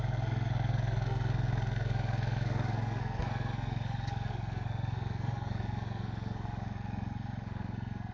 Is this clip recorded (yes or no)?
no